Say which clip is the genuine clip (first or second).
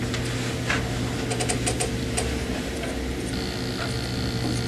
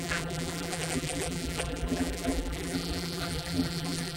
first